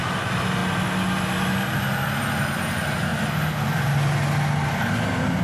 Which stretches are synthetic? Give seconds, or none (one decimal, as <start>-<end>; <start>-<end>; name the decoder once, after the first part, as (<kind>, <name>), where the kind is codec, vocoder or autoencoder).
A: none